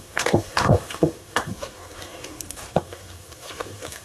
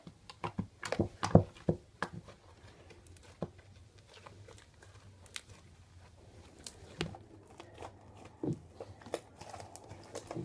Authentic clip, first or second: second